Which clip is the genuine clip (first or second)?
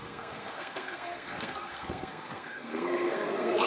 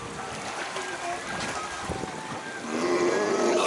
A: second